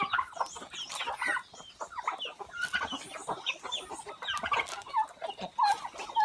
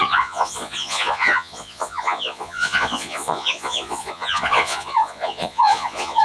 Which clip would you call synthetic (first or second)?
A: second